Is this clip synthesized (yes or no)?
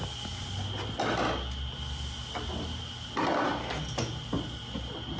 no